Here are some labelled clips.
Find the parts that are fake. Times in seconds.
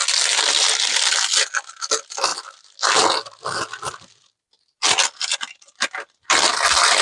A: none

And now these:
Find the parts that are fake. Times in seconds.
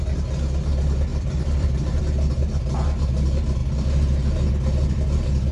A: 1.1-2.0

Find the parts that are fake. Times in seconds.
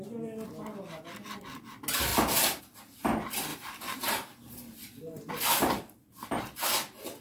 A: 3.5-5.3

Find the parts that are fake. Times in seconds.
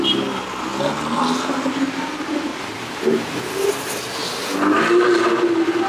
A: 2.5-3.4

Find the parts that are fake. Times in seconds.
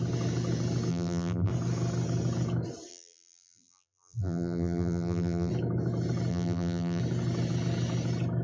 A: 0.9-1.5; 2.9-5.5; 6.3-7.0